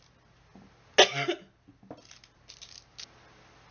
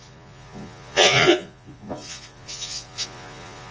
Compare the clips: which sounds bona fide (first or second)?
first